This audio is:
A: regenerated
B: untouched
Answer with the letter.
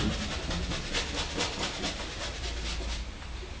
B